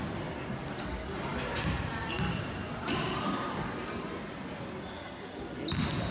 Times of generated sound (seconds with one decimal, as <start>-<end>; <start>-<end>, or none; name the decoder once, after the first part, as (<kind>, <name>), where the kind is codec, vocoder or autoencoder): none